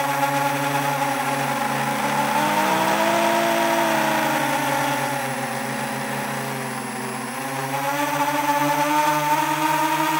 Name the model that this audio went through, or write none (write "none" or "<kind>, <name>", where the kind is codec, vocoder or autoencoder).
none